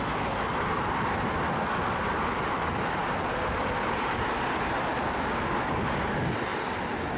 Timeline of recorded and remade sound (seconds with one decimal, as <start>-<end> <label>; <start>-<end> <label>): 0.0-7.2 recorded